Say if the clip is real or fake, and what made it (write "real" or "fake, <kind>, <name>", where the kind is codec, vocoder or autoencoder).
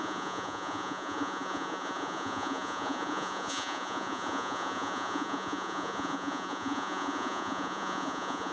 fake, vocoder, Vocos